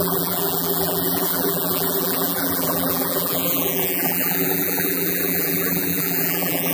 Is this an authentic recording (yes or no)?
no